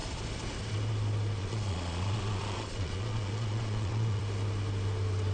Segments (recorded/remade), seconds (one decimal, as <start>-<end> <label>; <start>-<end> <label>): 0.0-1.4 recorded; 1.4-4.2 remade; 4.2-5.3 recorded